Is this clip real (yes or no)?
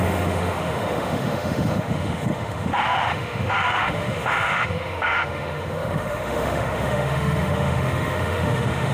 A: no